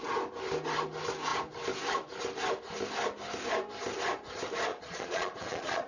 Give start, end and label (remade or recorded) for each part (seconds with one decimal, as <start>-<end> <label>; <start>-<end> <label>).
0.0-4.7 recorded; 4.7-5.9 remade